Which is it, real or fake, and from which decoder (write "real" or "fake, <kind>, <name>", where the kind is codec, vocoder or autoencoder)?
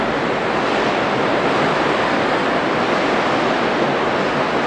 real